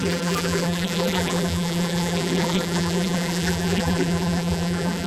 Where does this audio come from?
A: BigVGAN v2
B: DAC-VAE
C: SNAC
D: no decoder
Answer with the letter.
A